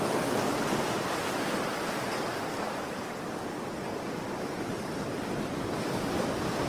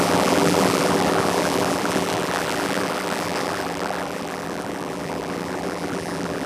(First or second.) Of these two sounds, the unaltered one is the first